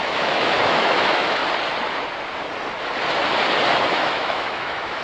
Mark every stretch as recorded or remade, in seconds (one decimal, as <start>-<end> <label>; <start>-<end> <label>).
0.0-1.4 remade; 1.4-3.9 recorded; 3.9-5.0 remade